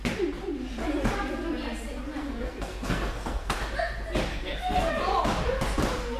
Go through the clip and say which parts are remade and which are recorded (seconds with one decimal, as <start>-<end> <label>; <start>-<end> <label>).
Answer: 0.0-2.2 recorded; 2.2-3.6 remade; 3.6-4.3 recorded; 4.3-4.9 remade; 4.9-6.2 recorded